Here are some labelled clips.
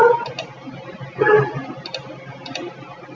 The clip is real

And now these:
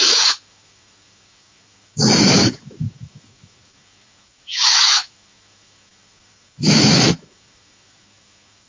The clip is fake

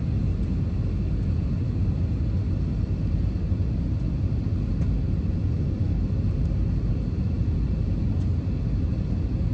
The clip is real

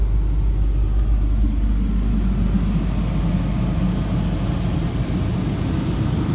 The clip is real